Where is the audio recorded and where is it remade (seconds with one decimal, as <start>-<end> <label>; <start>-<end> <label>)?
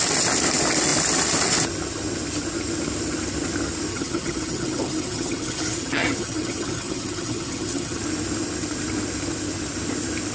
0.0-3.9 recorded; 3.9-8.0 remade; 8.0-10.3 recorded